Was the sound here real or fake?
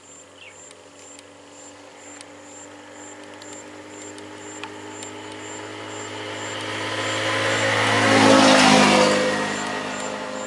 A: real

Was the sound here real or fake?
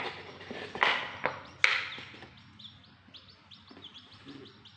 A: real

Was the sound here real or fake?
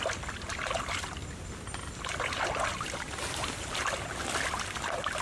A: real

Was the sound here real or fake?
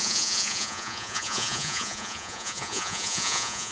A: fake